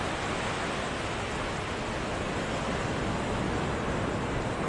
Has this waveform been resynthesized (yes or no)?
no